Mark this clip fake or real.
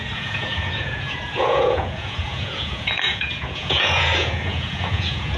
fake